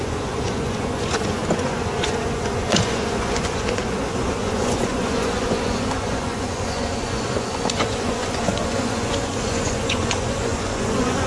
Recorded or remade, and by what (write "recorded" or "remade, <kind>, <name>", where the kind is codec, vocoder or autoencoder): remade, vocoder, Vocos